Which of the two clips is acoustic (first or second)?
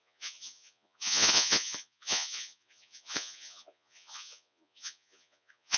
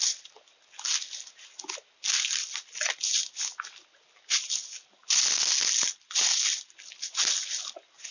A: second